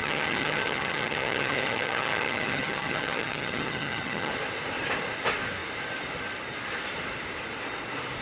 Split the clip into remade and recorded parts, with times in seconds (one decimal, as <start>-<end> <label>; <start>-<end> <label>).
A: 0.0-4.3 remade; 4.3-8.2 recorded